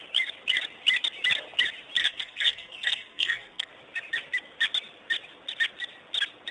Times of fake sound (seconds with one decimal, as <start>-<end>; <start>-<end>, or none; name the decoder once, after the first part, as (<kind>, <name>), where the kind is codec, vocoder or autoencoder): 2.0-3.7 (codec, SNAC)